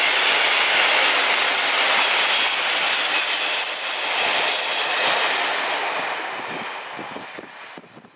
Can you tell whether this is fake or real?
real